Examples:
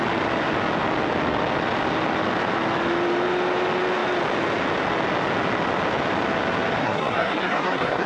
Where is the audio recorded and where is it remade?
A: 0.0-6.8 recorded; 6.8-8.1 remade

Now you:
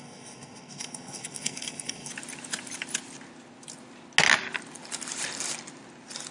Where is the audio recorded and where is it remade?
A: 0.0-2.1 remade; 2.1-6.3 recorded

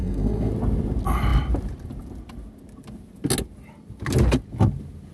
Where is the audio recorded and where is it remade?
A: 0.0-0.5 remade; 0.5-5.1 recorded

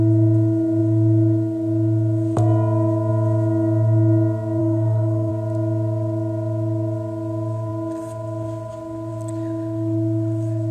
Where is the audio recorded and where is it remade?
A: 0.0-4.6 recorded; 4.6-5.3 remade; 5.3-10.7 recorded